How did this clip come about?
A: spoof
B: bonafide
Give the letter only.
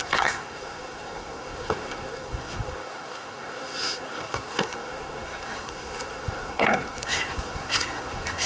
A